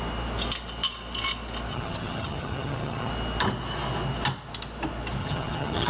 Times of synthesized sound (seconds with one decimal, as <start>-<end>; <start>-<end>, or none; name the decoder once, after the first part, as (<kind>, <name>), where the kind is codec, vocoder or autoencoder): 1.7-3.1 (vocoder, HiFi-GAN); 5.2-5.9